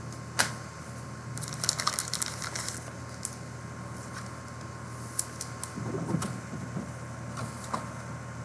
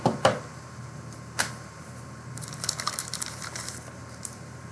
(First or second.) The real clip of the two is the first